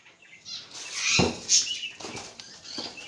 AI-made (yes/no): no